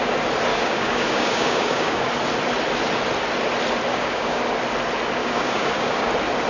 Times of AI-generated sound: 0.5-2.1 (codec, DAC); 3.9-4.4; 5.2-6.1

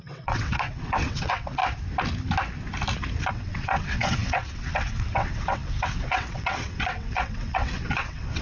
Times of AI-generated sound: 0.0-1.6 (vocoder, WaveNeXt); 3.3-8.4